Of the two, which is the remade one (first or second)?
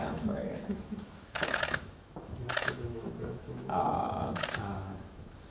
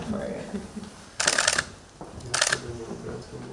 first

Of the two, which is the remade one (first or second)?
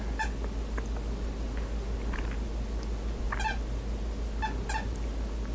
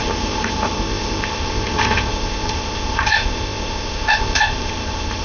second